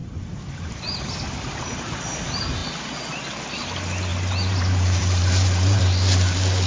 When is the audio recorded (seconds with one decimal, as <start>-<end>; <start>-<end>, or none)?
1.0-4.1; 5.8-6.7